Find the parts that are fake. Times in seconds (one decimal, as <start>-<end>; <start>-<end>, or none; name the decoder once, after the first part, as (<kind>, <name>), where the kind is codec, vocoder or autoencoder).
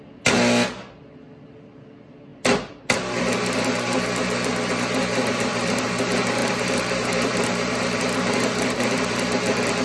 5.5-6.0 (vocoder, BigVGAN v2); 6.4-8.0